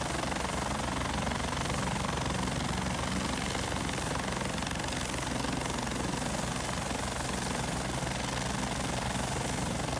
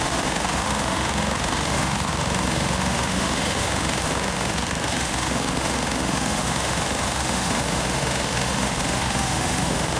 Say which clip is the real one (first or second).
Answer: first